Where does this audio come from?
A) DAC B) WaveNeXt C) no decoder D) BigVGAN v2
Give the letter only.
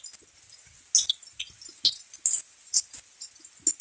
C